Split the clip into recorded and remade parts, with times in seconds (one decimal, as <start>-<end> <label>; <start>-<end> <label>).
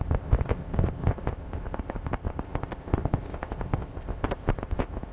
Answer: 0.0-5.1 remade